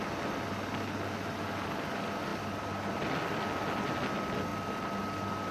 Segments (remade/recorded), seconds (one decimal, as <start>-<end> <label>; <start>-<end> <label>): 0.0-2.3 recorded; 2.3-2.9 remade; 2.9-5.5 recorded